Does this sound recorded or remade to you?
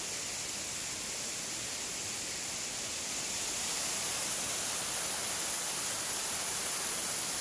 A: recorded